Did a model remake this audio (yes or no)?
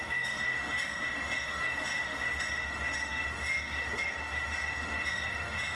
yes